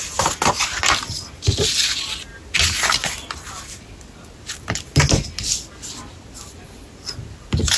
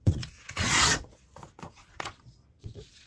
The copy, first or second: second